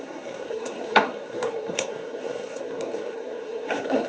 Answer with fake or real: fake